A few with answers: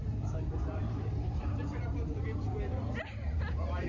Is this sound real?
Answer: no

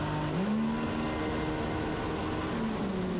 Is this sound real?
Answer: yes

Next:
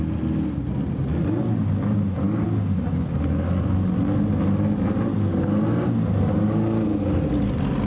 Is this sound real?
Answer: yes